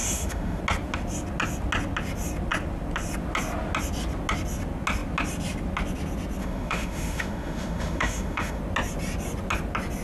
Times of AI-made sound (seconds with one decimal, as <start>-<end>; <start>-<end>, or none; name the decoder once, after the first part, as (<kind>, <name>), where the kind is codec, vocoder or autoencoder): 0.0-0.6 (autoencoder, DAC-VAE); 6.4-8.6